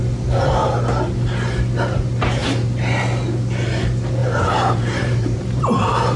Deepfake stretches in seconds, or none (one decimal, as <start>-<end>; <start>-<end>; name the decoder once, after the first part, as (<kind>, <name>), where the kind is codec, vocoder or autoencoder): 2.4-3.0 (vocoder, BigVGAN v2); 4.2-6.2